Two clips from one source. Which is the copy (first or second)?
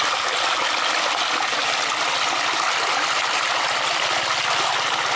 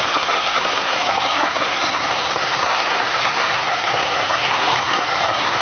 second